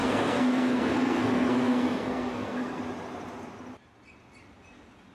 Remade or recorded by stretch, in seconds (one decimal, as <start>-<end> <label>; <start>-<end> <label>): 0.0-2.8 remade; 2.8-5.1 recorded